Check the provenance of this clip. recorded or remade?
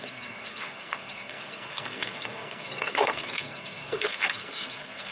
remade